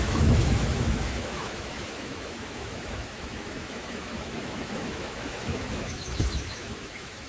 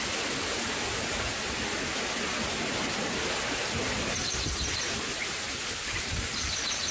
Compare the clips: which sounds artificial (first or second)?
first